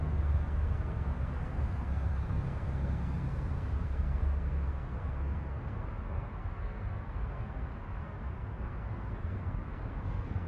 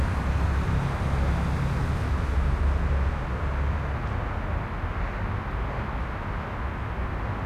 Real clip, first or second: second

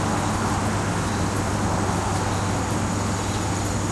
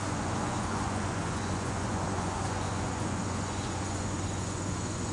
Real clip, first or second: first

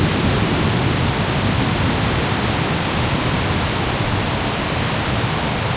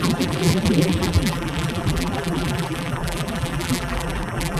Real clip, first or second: first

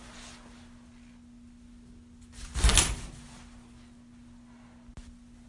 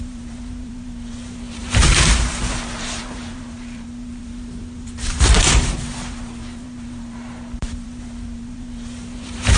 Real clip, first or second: first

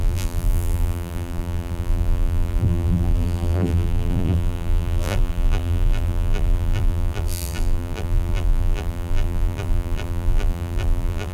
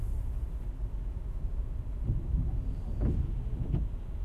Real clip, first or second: second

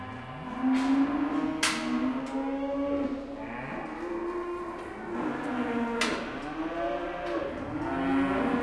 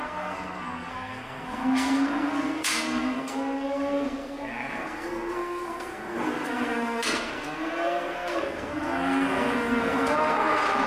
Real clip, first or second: first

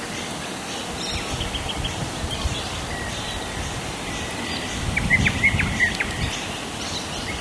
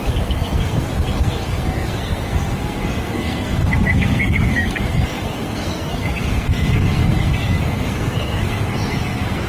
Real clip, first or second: first